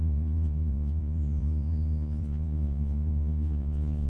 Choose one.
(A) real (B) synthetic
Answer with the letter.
B